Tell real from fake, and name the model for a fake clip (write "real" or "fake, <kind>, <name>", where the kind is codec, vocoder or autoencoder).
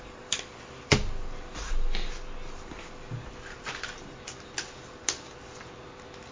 real